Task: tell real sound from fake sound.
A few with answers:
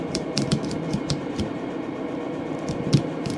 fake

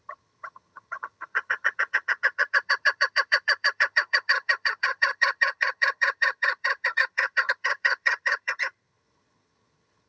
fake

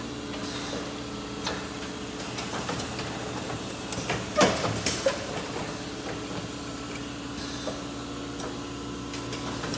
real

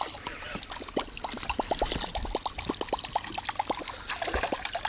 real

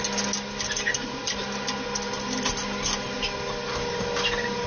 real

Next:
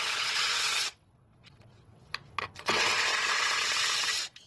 fake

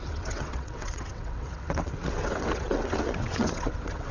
fake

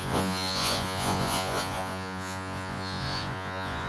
fake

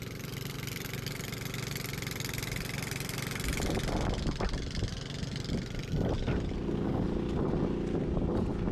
real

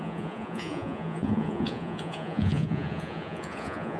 fake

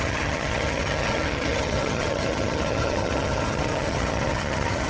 fake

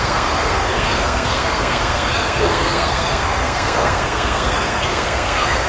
fake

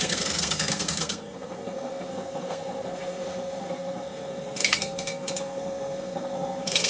fake